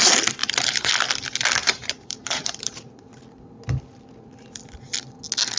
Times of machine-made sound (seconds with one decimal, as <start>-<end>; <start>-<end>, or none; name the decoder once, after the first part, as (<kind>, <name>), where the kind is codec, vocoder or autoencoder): 0.4-0.9 (vocoder, BigVGAN v2); 1.6-3.1